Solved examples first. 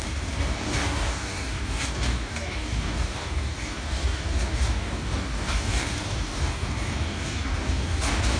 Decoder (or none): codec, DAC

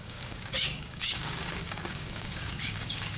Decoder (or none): codec, DAC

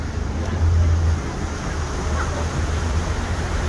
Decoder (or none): none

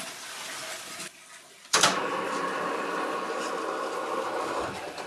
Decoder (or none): none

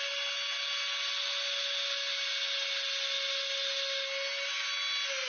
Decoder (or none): none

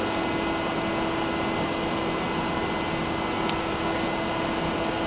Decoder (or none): none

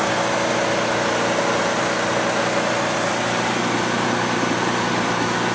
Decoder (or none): none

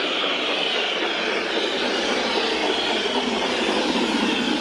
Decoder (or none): none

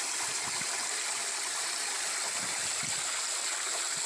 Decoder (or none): none